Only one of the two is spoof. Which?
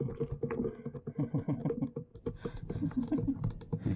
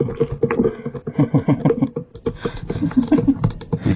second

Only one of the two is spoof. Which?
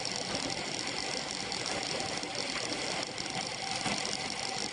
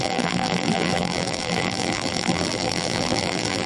second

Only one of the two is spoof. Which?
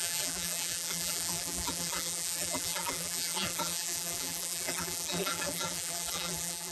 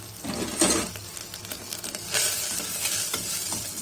first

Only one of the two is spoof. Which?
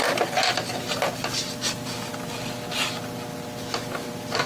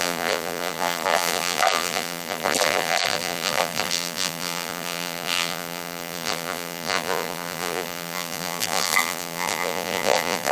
second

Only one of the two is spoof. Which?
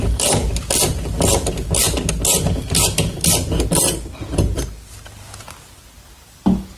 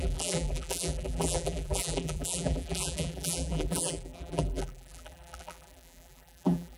second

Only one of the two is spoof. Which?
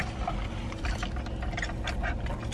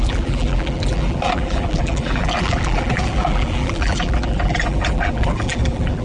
second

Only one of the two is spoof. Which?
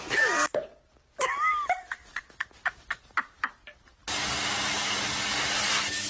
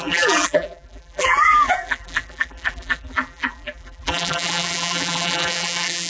second